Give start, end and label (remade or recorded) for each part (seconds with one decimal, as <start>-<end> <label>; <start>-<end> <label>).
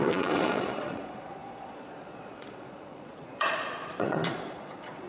0.0-5.1 remade